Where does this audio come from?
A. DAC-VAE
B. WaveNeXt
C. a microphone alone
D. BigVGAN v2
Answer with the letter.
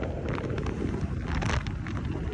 C